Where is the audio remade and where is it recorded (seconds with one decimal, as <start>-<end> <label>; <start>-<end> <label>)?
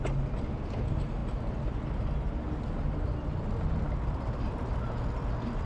0.0-5.7 recorded